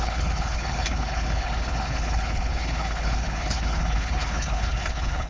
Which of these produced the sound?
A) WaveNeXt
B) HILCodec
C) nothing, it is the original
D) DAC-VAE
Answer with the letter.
B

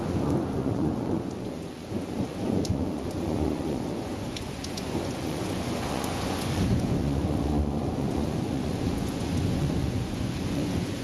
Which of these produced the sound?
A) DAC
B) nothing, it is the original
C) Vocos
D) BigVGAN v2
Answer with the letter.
C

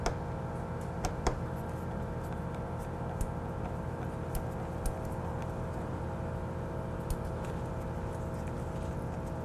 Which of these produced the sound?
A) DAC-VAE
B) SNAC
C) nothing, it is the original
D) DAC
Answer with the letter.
C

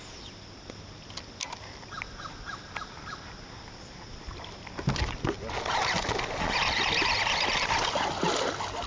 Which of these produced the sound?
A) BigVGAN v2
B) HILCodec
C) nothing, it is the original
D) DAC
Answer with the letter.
C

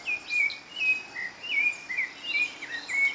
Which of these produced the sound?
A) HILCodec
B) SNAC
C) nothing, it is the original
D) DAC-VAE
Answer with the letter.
C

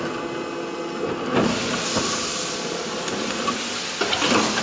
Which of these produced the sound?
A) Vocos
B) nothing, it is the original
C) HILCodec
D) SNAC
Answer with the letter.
B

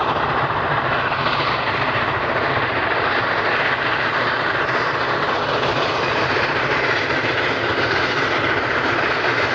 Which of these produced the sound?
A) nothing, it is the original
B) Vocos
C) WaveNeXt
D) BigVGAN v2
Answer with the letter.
D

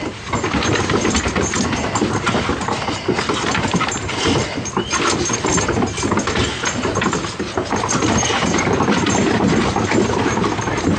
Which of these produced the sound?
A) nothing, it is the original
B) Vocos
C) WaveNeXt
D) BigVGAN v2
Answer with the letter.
A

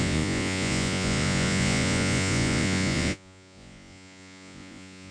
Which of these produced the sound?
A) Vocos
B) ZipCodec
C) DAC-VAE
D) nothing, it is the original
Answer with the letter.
A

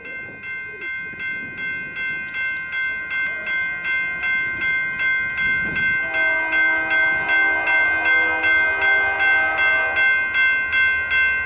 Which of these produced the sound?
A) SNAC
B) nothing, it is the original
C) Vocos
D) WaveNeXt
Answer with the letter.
B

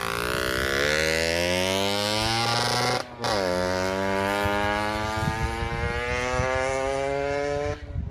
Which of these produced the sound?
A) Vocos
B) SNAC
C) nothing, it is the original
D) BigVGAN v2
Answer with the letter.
C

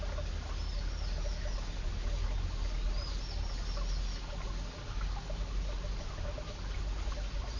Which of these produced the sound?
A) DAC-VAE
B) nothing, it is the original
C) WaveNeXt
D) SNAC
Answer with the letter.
B